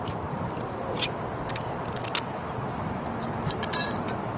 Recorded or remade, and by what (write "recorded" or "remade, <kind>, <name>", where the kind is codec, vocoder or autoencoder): recorded